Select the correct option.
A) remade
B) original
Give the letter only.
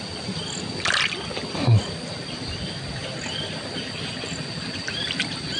B